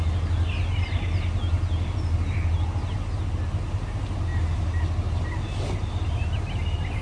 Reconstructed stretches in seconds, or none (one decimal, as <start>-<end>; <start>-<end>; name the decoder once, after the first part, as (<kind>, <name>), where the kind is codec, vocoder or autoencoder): none